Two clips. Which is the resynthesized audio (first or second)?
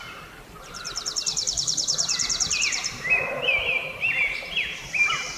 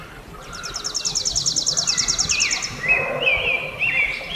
first